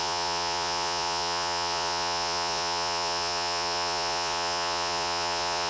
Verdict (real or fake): fake